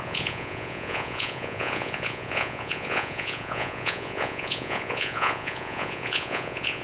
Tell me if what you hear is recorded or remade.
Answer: remade